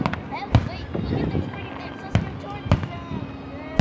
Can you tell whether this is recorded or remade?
recorded